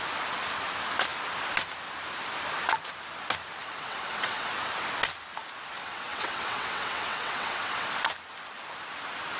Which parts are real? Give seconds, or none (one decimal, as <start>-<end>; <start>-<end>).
0.0-3.6; 4.5-5.8; 7.9-9.4